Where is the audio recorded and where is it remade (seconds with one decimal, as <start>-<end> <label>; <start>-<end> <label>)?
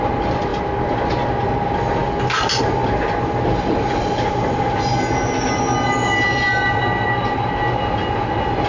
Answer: 0.0-8.7 recorded